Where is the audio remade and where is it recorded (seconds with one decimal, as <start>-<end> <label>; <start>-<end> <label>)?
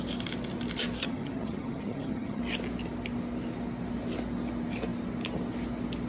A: 0.0-1.0 recorded; 1.0-2.4 remade; 2.4-6.1 recorded